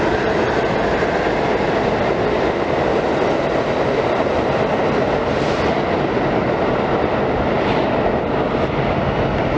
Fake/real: real